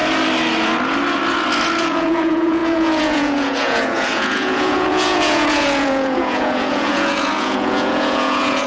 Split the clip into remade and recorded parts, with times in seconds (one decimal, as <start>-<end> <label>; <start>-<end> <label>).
0.0-1.8 recorded; 1.8-8.7 remade